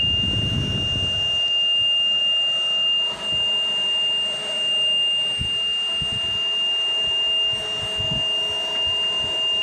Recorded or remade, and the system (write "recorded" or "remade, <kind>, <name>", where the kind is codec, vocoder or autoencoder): recorded